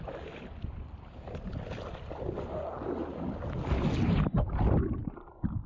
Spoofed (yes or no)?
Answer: no